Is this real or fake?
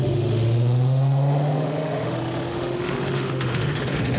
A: fake